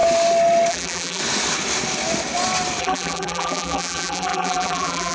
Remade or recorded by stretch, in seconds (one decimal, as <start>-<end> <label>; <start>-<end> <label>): 0.0-0.7 recorded; 0.7-1.2 remade; 1.2-2.8 recorded; 2.8-5.1 remade